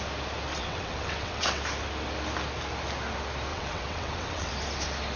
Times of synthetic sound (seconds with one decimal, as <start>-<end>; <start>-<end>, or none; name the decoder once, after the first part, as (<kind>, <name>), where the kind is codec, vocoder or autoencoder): 0.5-1.6 (vocoder, WaveNeXt); 3.5-4.5